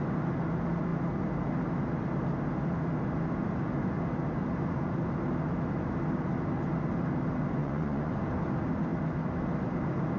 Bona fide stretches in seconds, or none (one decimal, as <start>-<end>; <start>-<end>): 0.0-7.6; 8.1-10.2